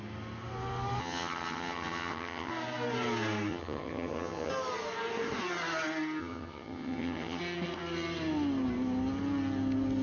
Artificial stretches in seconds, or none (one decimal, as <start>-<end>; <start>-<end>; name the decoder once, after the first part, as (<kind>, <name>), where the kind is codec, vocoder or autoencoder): 1.0-2.5 (vocoder, HiFi-GAN); 3.5-4.5; 6.2-7.4